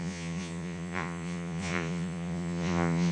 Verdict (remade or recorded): remade